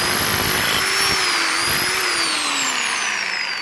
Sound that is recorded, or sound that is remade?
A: recorded